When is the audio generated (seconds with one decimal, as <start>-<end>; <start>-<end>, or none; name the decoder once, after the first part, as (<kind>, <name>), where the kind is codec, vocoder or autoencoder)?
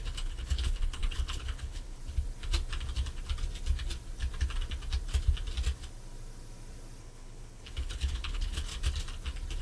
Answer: 0.0-2.0 (codec, HILCodec); 7.0-8.7